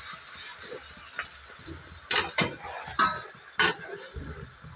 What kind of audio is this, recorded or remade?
recorded